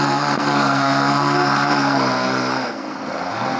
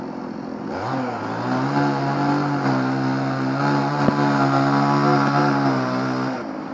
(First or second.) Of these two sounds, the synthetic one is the first